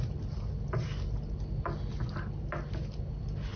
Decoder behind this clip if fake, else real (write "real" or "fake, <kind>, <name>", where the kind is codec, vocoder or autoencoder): real